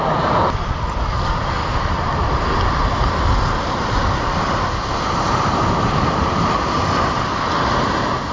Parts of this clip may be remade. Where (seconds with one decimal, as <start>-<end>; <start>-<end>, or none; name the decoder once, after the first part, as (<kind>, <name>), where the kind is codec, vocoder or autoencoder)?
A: none